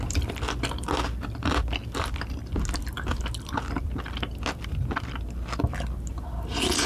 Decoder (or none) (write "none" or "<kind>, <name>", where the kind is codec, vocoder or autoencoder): none